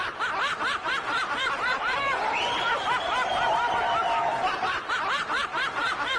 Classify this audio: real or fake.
real